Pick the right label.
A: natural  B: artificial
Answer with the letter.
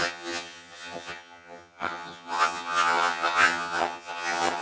B